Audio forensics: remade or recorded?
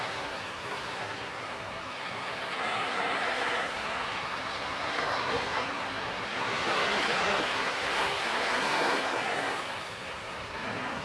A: remade